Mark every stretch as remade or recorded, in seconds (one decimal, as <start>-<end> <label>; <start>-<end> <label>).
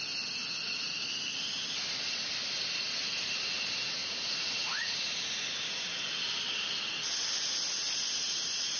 0.0-4.0 recorded; 4.0-6.2 remade; 6.2-8.8 recorded